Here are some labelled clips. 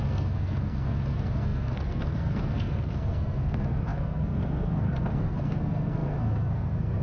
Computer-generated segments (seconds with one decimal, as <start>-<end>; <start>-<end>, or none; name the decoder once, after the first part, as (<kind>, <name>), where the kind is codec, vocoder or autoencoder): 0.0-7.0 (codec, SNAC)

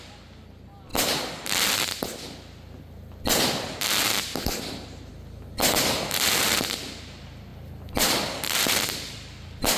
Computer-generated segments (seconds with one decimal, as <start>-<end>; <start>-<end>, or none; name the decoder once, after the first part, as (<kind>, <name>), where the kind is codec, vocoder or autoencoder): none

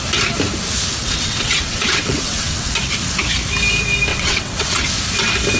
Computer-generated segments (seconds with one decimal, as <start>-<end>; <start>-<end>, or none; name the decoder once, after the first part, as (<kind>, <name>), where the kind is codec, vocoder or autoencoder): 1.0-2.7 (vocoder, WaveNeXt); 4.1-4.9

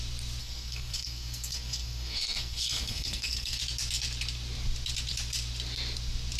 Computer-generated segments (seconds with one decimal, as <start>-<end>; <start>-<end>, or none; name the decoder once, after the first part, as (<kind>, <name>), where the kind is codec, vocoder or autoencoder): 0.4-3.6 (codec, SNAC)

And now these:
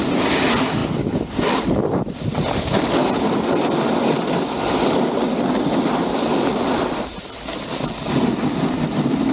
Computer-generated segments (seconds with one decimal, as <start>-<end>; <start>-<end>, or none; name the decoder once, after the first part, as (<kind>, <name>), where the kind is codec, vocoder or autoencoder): none

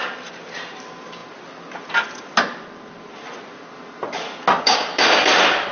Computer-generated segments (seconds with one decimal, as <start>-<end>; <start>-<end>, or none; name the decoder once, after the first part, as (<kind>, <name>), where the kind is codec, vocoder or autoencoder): 0.7-1.2 (vocoder, BigVGAN v2); 4.6-5.7